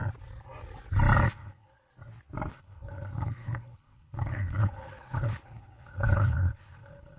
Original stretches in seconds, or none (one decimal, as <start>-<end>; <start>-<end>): 0.0-1.3; 1.9-2.5